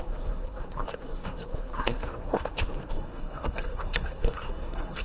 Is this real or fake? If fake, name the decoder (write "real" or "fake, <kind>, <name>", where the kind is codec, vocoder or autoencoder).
fake, codec, SNAC